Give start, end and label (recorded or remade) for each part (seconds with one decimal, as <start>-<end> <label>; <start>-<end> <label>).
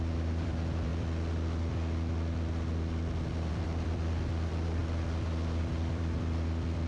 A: 0.0-0.9 remade; 0.9-3.5 recorded; 3.5-4.8 remade; 4.8-5.6 recorded; 5.6-6.9 remade